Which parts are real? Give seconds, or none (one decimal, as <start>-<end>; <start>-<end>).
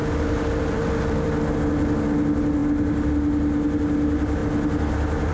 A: 0.0-5.3